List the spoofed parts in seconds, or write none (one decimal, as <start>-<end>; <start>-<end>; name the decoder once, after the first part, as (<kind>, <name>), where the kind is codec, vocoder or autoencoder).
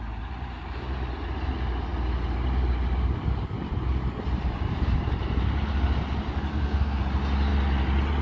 6.5-7.0 (codec, SNAC)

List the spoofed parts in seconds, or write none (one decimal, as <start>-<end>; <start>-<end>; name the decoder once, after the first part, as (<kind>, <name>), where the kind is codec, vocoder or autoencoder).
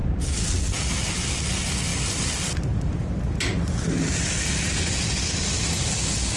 none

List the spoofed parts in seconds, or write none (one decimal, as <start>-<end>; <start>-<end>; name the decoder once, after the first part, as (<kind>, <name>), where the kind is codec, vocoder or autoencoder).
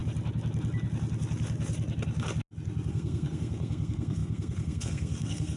2.9-5.6 (codec, SNAC)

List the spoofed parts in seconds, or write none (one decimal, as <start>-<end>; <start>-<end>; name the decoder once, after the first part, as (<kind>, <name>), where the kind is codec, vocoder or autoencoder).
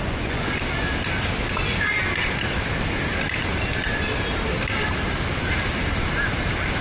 0.0-0.6 (vocoder, Vocos)